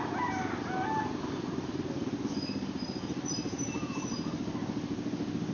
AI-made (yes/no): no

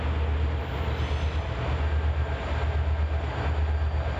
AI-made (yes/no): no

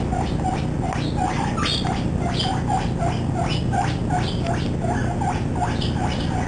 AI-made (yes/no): no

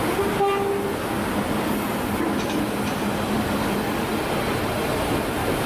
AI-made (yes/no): no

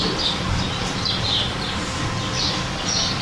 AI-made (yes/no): no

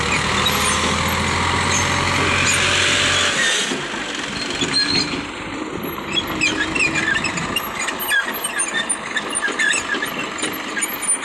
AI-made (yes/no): no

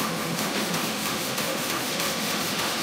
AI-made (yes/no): yes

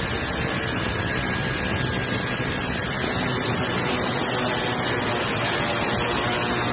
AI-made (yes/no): no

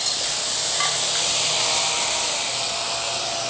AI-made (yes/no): no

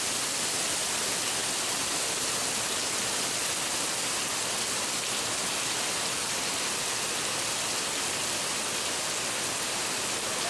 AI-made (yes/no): no